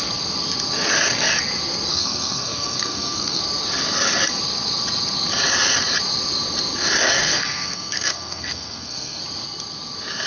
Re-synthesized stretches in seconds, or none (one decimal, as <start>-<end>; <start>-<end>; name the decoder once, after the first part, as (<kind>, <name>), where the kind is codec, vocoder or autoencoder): 1.9-3.4 (codec, SNAC); 7.2-9.2